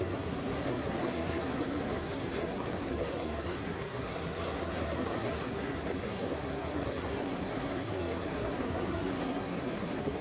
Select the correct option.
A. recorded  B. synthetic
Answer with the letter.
B